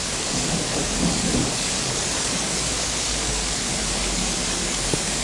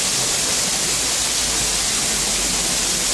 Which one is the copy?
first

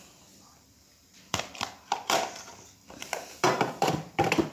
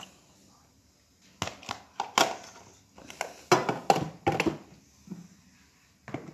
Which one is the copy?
first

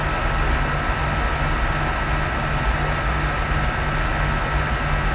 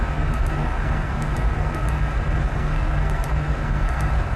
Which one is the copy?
second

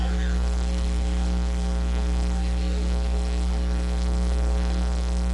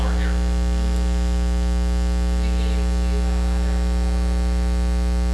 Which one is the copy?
first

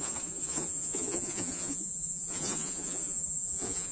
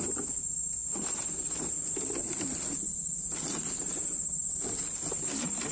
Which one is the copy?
first